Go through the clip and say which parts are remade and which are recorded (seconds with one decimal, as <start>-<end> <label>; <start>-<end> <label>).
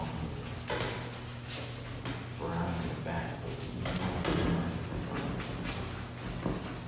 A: 0.0-6.9 recorded